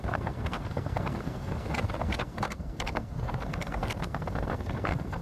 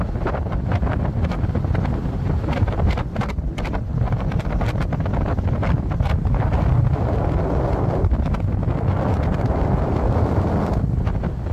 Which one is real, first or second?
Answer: second